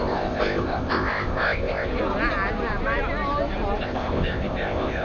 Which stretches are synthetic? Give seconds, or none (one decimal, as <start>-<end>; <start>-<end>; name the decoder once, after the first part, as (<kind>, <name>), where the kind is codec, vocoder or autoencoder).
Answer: 0.0-1.9 (codec, ZipCodec); 3.8-5.0